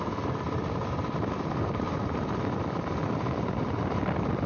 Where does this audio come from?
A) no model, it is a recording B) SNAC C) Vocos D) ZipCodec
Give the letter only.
A